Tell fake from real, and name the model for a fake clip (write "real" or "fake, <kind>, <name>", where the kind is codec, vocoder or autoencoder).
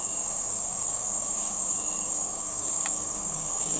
fake, codec, DAC